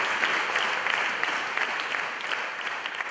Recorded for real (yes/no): yes